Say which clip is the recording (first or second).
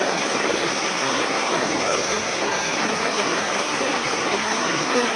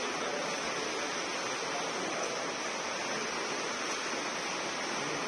second